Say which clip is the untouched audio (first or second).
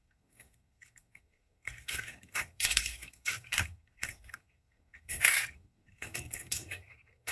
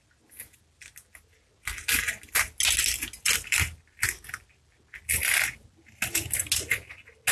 second